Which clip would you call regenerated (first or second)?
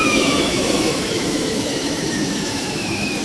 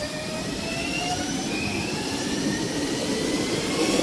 first